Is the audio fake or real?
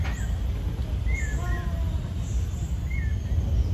real